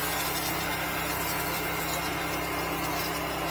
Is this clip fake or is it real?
real